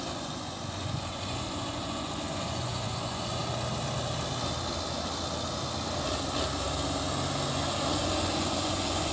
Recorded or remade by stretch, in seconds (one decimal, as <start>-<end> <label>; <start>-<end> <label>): 0.0-3.4 remade; 3.4-7.5 recorded; 7.5-9.1 remade